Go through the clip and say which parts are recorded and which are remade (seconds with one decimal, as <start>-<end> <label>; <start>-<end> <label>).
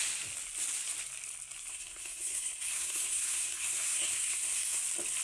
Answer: 0.0-1.7 recorded; 1.7-4.8 remade; 4.8-5.2 recorded